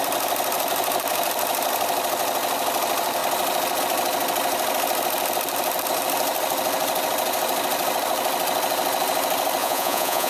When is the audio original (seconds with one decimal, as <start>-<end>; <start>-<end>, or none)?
0.0-9.6